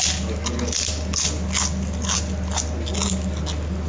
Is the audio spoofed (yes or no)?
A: no